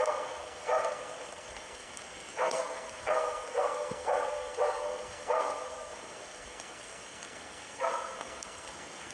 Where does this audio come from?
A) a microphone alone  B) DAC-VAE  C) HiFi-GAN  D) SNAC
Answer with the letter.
D